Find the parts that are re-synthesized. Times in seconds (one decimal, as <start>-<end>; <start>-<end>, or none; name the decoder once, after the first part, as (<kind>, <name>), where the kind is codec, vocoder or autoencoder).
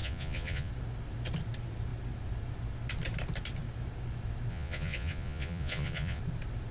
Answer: 0.0-0.7 (vocoder, Vocos); 4.5-6.2